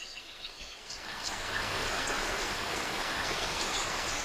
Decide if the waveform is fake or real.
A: fake